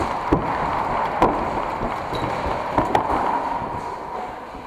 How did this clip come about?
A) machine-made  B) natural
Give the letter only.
B